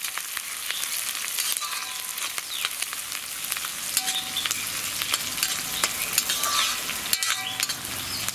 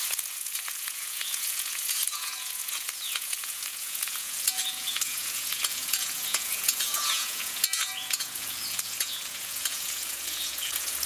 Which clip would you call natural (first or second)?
first